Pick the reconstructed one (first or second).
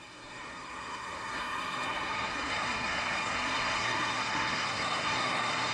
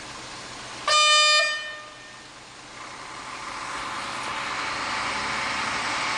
first